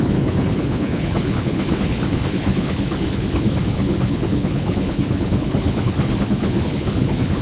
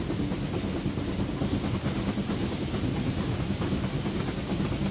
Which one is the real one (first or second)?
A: second